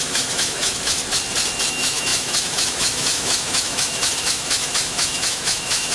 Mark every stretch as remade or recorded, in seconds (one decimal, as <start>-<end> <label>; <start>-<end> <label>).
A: 0.0-1.0 remade; 1.0-1.7 recorded; 1.7-5.9 remade